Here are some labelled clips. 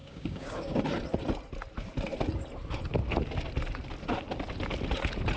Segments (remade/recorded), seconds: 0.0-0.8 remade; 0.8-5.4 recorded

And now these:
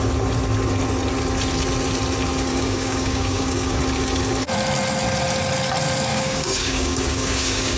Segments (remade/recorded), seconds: 0.0-2.5 recorded; 2.5-3.8 remade; 3.8-6.1 recorded; 6.1-7.8 remade

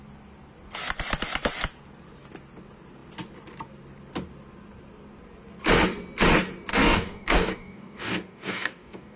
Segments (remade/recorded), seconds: 0.0-6.7 recorded; 6.7-9.2 remade

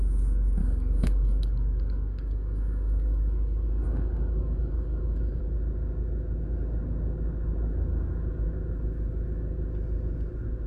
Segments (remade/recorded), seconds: 0.0-0.6 recorded; 0.6-5.4 remade; 5.4-10.7 recorded

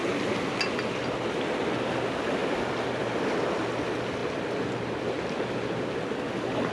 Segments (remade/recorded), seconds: 0.0-6.7 recorded